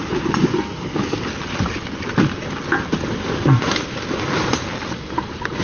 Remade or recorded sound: recorded